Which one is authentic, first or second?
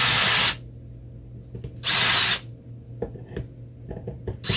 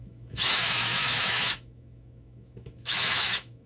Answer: first